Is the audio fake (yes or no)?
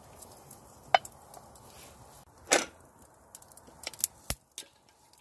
no